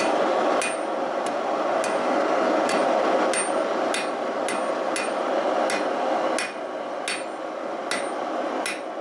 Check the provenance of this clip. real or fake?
real